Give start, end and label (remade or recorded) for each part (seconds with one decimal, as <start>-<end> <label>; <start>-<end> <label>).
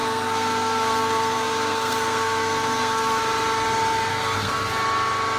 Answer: 0.0-3.2 remade; 3.2-4.1 recorded; 4.1-4.7 remade; 4.7-5.4 recorded